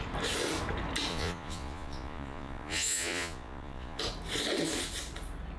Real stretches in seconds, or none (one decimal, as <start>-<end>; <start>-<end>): 0.0-1.1; 4.0-5.6